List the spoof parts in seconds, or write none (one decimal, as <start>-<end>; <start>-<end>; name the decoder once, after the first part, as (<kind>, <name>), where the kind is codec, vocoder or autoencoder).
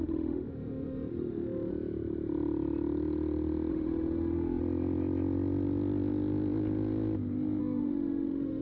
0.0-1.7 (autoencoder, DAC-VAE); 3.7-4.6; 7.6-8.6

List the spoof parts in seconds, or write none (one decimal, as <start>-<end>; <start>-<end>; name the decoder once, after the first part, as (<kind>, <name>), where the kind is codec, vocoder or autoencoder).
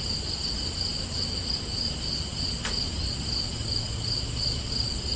none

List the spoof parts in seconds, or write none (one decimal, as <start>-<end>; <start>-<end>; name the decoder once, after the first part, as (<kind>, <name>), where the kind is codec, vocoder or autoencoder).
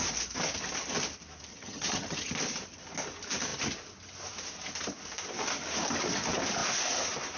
1.5-2.3 (vocoder, HiFi-GAN)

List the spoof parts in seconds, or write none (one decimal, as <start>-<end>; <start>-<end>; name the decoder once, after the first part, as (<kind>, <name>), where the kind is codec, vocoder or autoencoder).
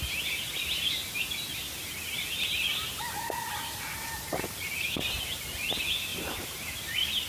3.9-4.7 (vocoder, BigVGAN v2); 6.1-6.7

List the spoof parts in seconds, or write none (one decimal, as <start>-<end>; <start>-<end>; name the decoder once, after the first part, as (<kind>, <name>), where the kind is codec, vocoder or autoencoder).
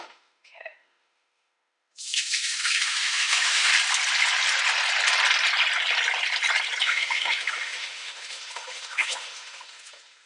0.0-3.7 (autoencoder, DAC-VAE); 6.8-10.3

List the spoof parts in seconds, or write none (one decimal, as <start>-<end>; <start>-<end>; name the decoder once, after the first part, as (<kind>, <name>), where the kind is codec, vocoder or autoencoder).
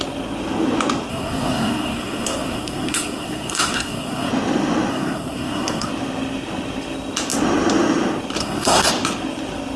1.1-4.3 (codec, SNAC); 4.9-5.9; 8.4-8.9